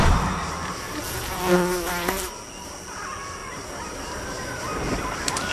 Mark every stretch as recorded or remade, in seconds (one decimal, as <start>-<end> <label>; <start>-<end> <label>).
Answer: 0.0-3.4 recorded; 3.4-4.6 remade; 4.6-5.5 recorded